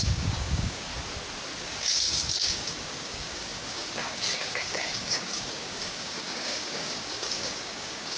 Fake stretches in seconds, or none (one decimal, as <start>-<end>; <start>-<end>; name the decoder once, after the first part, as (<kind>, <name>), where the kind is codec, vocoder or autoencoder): 0.0-0.9 (codec, DAC); 1.6-8.2